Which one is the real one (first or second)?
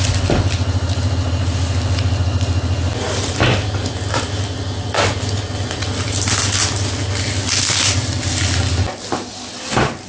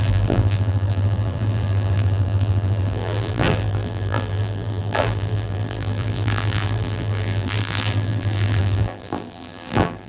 first